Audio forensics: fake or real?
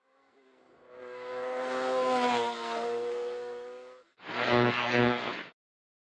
fake